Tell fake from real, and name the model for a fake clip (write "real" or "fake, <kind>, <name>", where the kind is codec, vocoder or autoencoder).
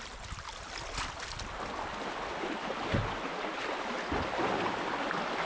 real